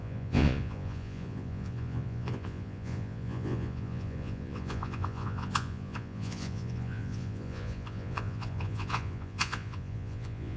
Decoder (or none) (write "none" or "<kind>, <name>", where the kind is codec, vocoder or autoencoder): vocoder, Vocos